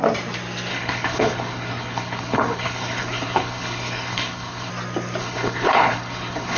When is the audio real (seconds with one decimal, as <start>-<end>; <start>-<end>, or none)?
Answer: 0.0-0.7; 4.7-5.2